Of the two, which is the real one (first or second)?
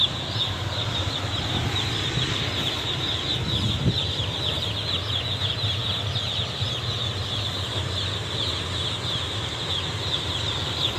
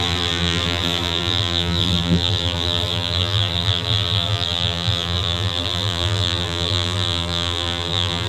first